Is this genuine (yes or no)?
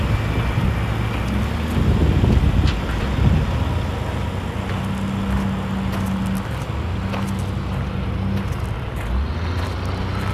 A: yes